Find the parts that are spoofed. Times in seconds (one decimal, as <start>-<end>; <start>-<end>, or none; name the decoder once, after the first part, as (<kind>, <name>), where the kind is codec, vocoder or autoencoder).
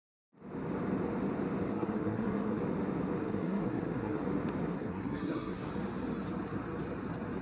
1.7-2.6 (codec, SNAC); 3.2-4.2; 4.7-5.7